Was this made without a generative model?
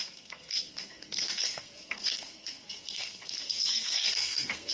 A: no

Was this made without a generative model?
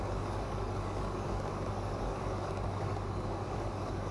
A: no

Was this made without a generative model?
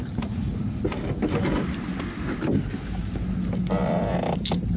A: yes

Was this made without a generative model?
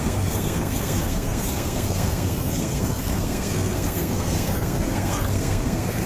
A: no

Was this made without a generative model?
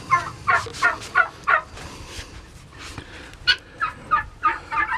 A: yes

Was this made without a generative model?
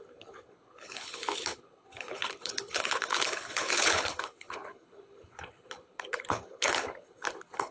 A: no